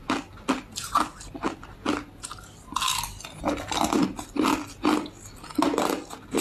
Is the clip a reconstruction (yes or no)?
no